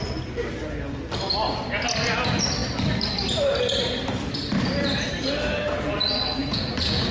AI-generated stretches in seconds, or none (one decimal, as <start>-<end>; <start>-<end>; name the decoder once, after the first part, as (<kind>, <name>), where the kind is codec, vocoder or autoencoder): 6.4-7.1 (vocoder, Vocos)